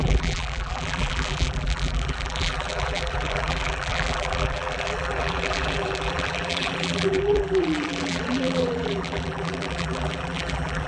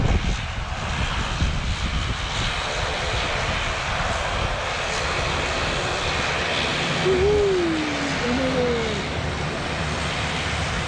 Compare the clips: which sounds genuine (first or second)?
second